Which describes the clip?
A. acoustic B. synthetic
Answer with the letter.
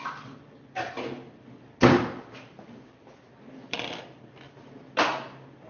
A